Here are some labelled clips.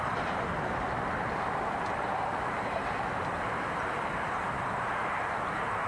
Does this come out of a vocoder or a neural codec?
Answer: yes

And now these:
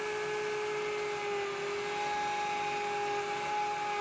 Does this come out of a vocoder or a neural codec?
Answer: no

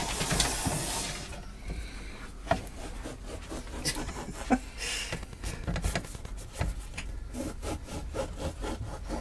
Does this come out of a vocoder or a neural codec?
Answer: no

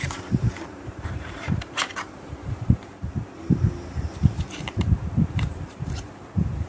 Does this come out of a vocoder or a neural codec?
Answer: yes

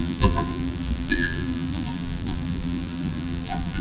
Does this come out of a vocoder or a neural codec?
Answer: yes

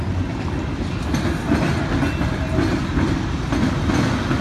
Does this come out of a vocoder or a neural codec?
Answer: no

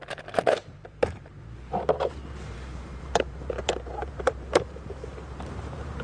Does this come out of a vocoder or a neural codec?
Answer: yes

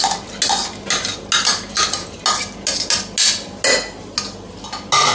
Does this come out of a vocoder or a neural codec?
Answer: no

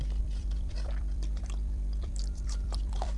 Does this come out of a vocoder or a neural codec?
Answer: yes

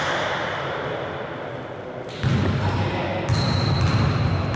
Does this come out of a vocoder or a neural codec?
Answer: no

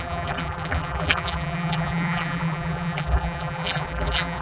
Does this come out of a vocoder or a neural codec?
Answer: yes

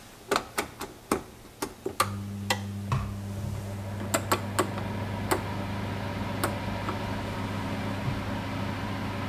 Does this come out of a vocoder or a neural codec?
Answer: no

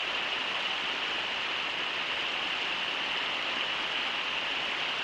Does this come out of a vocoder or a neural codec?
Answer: no